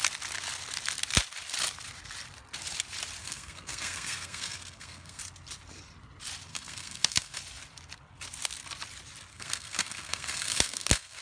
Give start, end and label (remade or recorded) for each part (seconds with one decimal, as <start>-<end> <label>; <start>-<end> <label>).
0.0-3.2 recorded; 3.2-5.2 remade; 5.2-6.5 recorded; 6.5-7.4 remade; 7.4-9.3 recorded; 9.3-11.2 remade